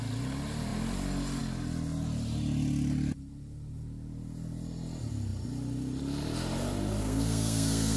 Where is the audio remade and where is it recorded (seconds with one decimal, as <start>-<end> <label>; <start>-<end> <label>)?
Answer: 0.0-7.0 recorded; 7.0-8.0 remade